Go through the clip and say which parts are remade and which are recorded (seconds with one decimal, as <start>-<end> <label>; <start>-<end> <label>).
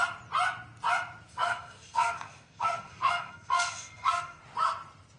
0.0-1.3 recorded; 1.3-4.4 remade; 4.4-5.2 recorded